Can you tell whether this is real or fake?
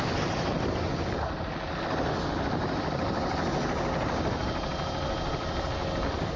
real